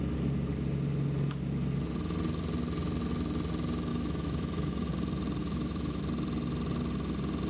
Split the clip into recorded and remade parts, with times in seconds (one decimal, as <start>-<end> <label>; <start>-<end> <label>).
0.0-3.9 recorded; 3.9-4.9 remade; 4.9-5.4 recorded; 5.4-6.0 remade; 6.0-7.5 recorded

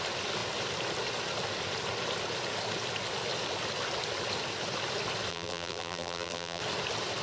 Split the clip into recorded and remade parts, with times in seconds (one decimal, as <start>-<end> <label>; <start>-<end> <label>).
0.0-5.3 recorded; 5.3-6.6 remade; 6.6-7.2 recorded

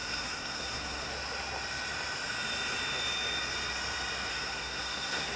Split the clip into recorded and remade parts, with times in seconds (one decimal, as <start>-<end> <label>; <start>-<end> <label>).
0.0-1.1 remade; 1.1-4.3 recorded; 4.3-5.4 remade

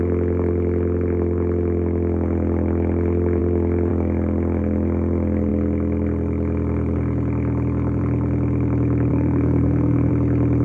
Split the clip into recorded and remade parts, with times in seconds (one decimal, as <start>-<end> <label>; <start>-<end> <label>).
0.0-9.1 recorded; 9.1-10.1 remade; 10.1-10.6 recorded

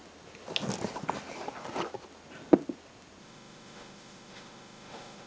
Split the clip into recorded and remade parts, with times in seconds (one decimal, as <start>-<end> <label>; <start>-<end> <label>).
0.0-3.2 recorded; 3.2-5.3 remade

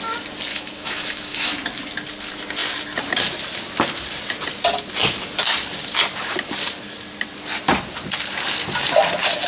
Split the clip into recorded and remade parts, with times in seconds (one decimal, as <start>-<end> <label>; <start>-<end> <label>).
0.0-0.5 recorded; 0.5-1.5 remade; 1.5-9.5 recorded

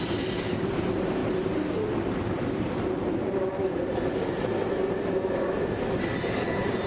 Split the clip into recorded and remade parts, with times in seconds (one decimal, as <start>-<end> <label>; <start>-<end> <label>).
0.0-6.9 recorded